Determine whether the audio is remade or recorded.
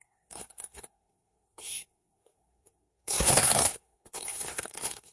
remade